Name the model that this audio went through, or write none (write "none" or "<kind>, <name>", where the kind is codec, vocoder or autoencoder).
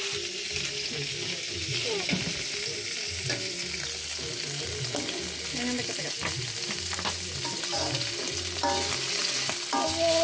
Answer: none